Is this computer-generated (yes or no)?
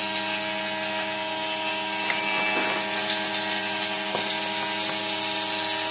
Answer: no